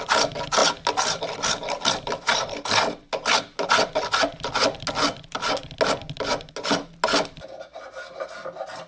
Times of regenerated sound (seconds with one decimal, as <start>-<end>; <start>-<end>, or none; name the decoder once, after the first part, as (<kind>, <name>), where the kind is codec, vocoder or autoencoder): none